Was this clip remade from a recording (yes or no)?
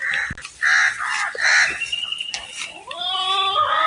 no